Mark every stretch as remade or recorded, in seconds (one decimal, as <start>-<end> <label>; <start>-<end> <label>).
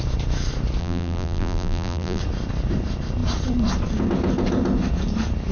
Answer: 0.0-0.8 recorded; 0.8-2.2 remade; 2.2-5.5 recorded